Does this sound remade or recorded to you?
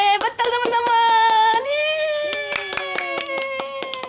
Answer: recorded